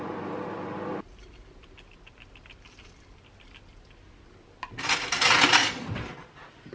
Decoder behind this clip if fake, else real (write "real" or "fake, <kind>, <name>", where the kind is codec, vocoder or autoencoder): real